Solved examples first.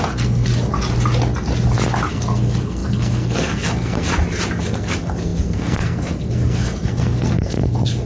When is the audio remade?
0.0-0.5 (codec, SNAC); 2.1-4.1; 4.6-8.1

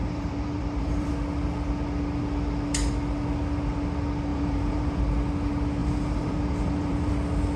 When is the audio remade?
0.0-1.1 (vocoder, BigVGAN v2); 4.3-5.0; 5.8-7.1

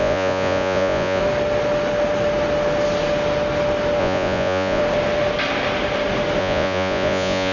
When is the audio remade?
0.0-1.2 (vocoder, Vocos); 4.0-4.8; 6.4-7.5

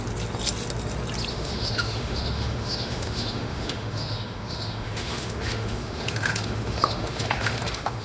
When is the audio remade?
1.3-8.0 (autoencoder, DAC-VAE)

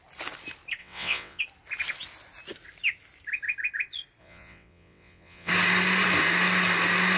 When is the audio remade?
0.8-1.4 (vocoder, WaveNeXt); 4.2-5.5